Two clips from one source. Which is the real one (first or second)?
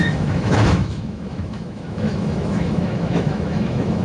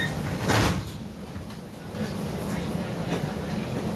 second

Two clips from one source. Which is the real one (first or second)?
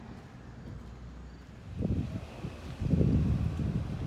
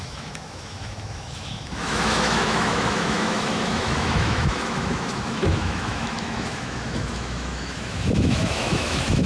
first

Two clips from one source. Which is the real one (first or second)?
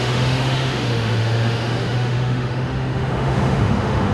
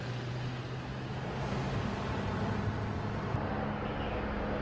second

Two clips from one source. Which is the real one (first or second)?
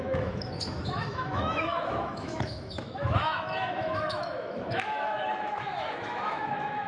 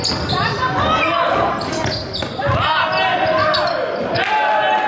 second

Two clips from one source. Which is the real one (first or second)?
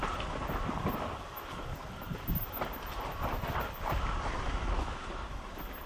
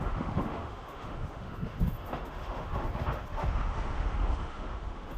first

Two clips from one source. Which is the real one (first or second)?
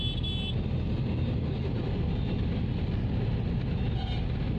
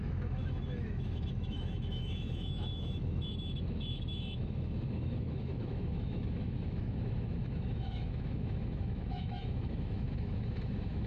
first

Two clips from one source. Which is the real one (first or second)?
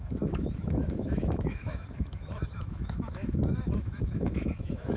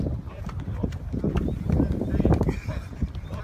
second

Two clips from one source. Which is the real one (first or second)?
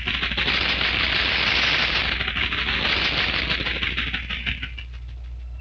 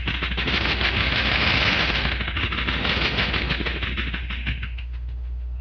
first